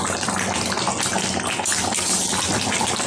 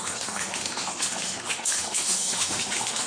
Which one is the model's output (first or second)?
second